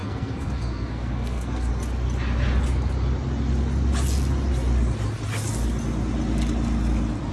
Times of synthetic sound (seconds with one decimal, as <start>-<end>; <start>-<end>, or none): 0.0-1.7